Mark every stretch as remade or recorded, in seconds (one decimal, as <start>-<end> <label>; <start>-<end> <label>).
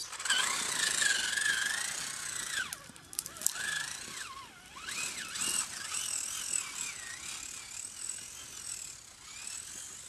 0.0-10.1 recorded